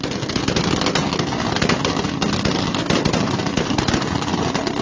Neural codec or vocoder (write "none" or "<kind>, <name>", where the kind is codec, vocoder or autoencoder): none